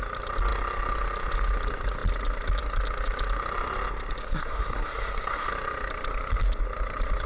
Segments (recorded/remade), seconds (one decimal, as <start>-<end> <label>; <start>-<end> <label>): 0.0-4.2 recorded; 4.2-5.5 remade; 5.5-7.3 recorded